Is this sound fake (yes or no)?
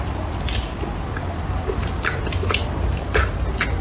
no